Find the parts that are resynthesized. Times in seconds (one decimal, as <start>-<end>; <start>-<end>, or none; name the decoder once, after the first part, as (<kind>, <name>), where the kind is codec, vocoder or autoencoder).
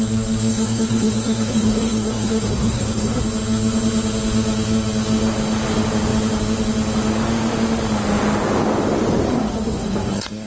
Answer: 0.5-3.2 (codec, SNAC); 9.3-10.5